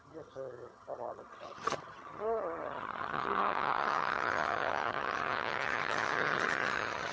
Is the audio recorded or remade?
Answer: remade